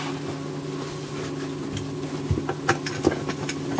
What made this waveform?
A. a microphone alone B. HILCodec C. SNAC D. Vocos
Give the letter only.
A